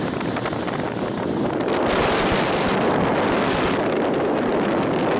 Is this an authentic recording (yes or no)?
yes